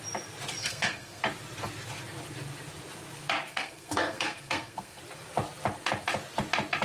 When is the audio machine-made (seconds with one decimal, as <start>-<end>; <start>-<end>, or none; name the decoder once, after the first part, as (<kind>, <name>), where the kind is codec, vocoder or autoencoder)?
0.6-1.2 (codec, SNAC); 3.5-5.0